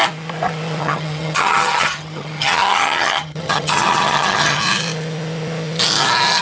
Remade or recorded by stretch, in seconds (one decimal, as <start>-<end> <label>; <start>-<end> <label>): 0.0-0.8 recorded; 0.8-4.6 remade; 4.6-6.4 recorded